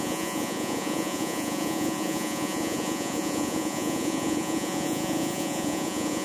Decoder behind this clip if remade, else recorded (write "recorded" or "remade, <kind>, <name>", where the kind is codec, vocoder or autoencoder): remade, vocoder, Vocos